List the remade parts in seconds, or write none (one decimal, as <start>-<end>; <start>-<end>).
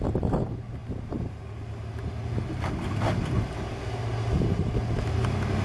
none